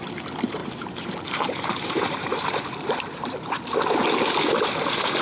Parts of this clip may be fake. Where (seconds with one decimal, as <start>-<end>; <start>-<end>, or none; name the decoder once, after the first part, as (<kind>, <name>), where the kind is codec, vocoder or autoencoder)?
0.6-3.7 (vocoder, BigVGAN v2)